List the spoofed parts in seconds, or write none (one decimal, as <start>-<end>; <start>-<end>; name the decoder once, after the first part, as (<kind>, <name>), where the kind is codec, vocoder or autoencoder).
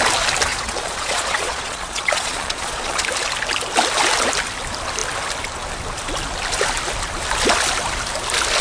0.5-3.0 (vocoder, Vocos)